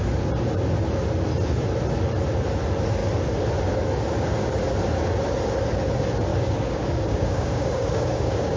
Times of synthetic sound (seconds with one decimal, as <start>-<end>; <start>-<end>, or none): 6.3-8.6